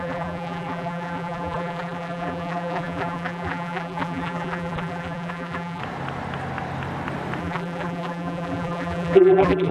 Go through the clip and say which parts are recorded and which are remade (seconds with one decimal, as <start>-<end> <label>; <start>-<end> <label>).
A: 0.0-5.8 remade; 5.8-7.4 recorded; 7.4-9.7 remade